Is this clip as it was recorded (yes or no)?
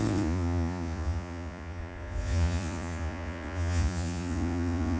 no